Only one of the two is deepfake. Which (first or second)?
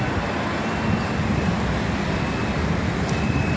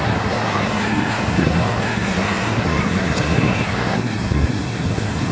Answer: second